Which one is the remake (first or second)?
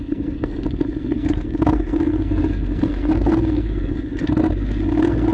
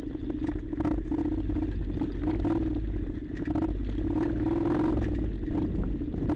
first